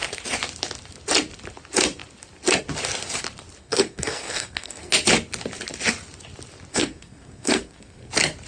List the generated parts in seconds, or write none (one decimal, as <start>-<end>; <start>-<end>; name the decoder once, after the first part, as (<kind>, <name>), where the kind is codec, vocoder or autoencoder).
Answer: 3.6-4.9 (codec, SNAC); 6.7-8.1